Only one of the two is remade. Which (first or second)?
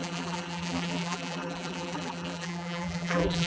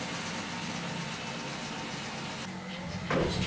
first